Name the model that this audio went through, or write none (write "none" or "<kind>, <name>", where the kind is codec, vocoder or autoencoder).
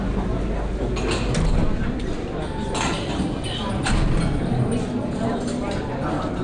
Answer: none